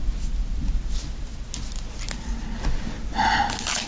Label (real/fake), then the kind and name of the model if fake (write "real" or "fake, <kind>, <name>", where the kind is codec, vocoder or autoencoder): real